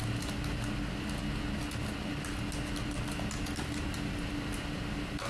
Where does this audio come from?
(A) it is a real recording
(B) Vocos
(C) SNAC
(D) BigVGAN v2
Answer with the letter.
A